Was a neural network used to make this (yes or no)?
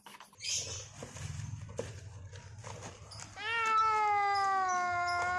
no